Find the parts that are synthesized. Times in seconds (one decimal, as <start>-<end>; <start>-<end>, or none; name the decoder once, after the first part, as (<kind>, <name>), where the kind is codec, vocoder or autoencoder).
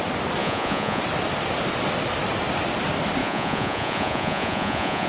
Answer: 0.4-1.0 (vocoder, Vocos); 3.2-5.1